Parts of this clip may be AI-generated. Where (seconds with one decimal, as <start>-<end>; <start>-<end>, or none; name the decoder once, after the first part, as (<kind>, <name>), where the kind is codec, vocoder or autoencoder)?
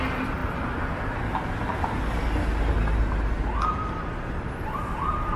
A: none